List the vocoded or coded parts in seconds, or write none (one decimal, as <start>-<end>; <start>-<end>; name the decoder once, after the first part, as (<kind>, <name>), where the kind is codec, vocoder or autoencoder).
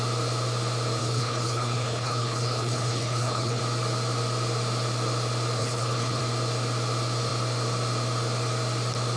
1.0-3.6 (codec, HILCodec); 5.6-6.2